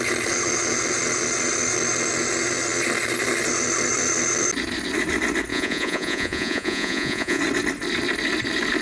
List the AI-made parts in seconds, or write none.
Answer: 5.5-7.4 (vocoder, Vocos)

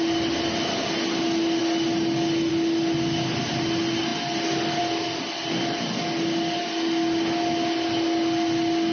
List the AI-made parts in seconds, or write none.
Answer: none